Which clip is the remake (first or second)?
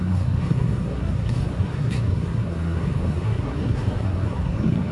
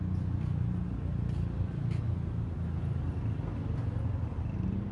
first